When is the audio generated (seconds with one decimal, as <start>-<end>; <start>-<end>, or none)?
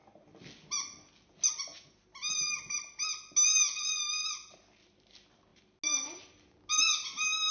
none